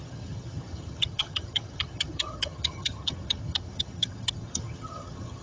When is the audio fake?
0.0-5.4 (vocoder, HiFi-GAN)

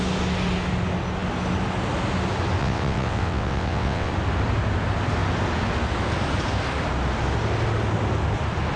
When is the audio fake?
2.6-4.1 (vocoder, WaveNeXt)

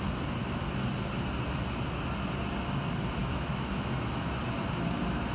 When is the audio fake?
3.2-4.3 (autoencoder, DAC-VAE)

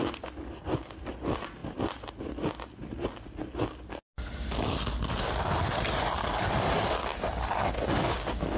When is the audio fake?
none

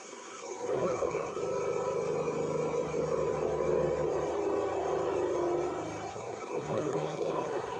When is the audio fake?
0.0-1.4 (codec, SNAC); 6.1-7.8

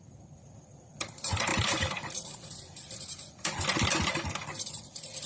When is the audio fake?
0.0-5.3 (vocoder, BigVGAN v2)